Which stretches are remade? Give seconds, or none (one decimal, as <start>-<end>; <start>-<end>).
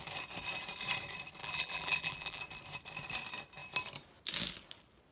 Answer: 1.4-2.4